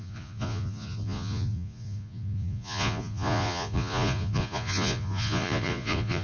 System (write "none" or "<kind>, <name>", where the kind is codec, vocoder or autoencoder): vocoder, Vocos